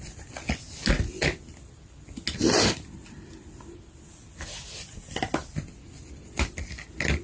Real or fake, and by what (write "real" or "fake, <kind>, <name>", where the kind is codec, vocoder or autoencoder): real